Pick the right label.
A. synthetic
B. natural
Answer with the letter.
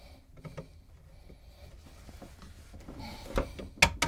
B